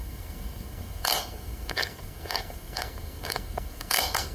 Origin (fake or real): fake